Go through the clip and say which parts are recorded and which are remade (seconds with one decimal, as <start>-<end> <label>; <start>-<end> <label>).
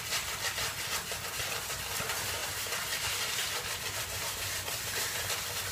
0.0-2.4 recorded; 2.4-5.7 remade